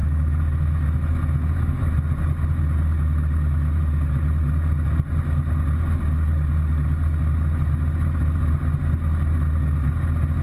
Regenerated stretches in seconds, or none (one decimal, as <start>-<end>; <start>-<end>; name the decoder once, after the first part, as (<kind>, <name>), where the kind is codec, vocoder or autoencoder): 0.0-1.9 (autoencoder, DAC-VAE)